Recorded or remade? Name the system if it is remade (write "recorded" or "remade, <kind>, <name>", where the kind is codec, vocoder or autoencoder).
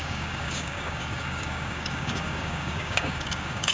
remade, codec, DAC